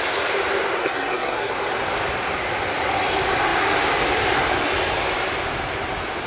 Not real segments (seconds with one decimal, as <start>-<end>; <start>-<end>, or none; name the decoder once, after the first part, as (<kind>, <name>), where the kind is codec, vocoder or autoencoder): 0.8-1.5 (codec, SNAC)